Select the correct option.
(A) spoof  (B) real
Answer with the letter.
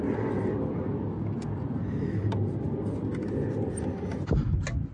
B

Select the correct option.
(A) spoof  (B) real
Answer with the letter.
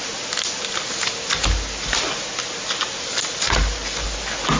B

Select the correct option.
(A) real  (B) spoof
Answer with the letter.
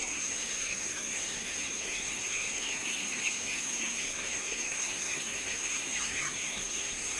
B